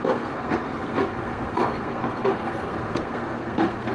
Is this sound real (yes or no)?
no